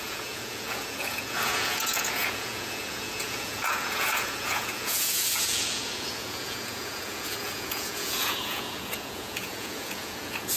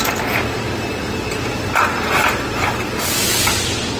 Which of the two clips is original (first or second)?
second